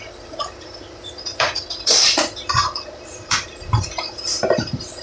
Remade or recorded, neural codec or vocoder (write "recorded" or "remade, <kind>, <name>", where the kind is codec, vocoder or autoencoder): remade, vocoder, BigVGAN v2